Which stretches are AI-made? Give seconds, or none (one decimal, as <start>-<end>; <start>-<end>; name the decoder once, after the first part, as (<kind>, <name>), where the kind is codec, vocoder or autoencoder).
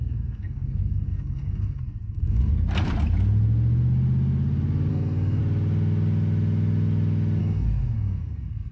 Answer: 0.0-2.5 (codec, SNAC); 4.9-5.4; 7.4-8.7